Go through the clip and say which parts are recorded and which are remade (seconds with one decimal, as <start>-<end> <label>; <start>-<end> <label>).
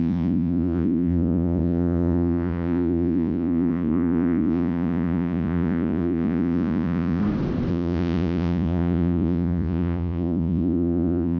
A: 0.0-7.2 remade; 7.2-7.7 recorded; 7.7-11.4 remade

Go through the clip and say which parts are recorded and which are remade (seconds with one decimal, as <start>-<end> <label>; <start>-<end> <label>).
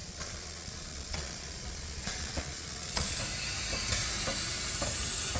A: 0.0-3.2 remade; 3.2-5.4 recorded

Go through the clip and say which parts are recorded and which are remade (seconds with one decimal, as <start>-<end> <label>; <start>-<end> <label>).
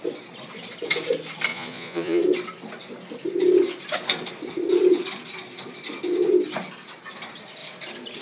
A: 0.0-1.5 recorded; 1.5-2.2 remade; 2.2-8.2 recorded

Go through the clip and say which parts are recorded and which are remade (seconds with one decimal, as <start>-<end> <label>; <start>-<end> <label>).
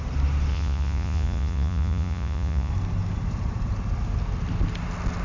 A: 0.0-0.5 recorded; 0.5-2.7 remade; 2.7-5.2 recorded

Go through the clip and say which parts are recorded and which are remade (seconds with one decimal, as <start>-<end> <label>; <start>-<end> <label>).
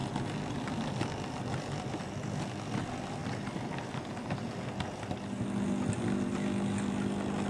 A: 0.0-7.5 recorded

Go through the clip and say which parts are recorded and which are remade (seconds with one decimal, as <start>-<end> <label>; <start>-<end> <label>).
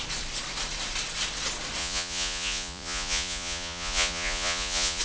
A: 0.0-1.8 recorded; 1.8-5.0 remade